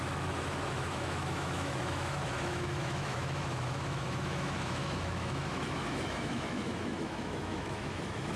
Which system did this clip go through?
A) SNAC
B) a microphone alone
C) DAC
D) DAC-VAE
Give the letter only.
D